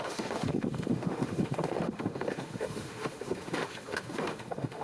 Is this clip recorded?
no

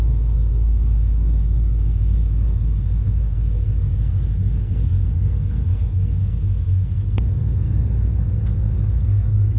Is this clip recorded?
no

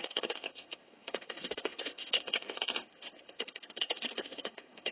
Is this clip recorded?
no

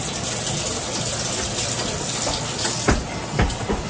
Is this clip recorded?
yes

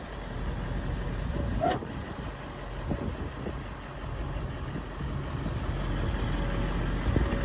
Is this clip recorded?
yes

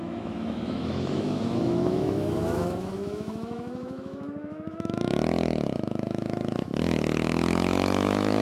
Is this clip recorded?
no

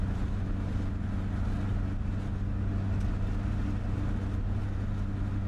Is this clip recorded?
yes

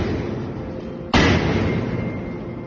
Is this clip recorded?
yes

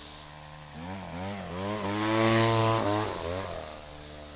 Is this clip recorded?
yes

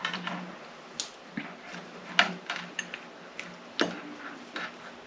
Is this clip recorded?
yes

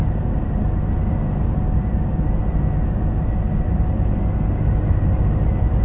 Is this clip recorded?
yes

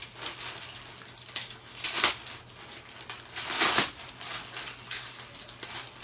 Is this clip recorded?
yes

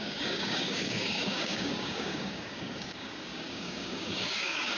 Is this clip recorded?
no